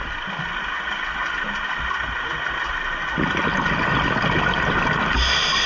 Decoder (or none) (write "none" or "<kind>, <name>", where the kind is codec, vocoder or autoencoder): none